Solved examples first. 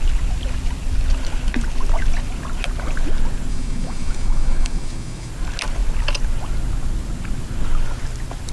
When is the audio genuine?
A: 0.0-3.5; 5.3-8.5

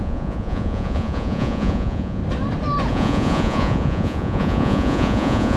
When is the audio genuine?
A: 2.2-2.9

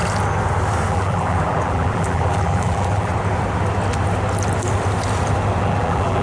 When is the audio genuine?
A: 0.0-0.9; 3.1-5.6

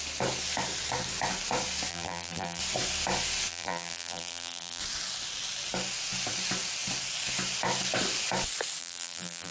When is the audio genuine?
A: 0.0-1.9; 2.6-3.5; 4.8-8.8

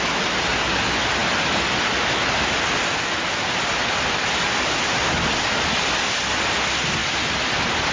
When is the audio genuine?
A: 0.0-7.9

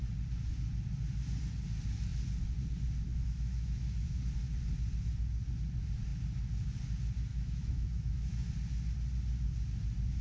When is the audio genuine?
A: 0.0-3.1; 4.2-7.3; 8.5-10.2

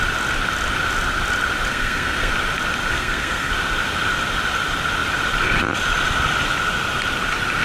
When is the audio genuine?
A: 0.0-1.7; 2.3-2.9; 3.5-7.6

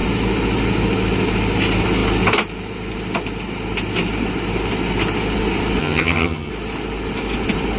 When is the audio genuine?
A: 0.0-5.8; 6.5-7.8